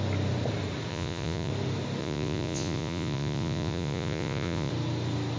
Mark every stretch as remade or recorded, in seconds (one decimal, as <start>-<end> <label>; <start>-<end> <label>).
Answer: 0.0-0.9 recorded; 0.9-1.5 remade; 1.5-2.0 recorded; 2.0-4.7 remade; 4.7-5.4 recorded